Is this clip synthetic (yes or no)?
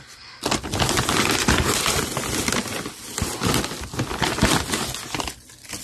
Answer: no